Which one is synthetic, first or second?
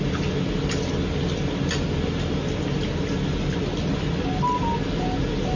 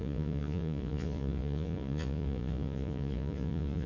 second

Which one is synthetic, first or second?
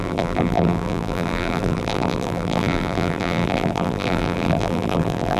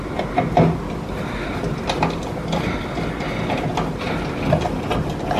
first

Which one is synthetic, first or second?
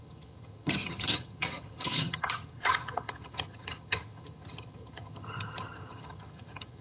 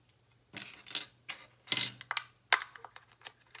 first